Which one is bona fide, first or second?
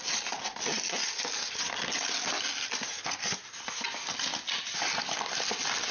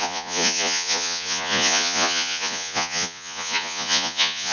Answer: first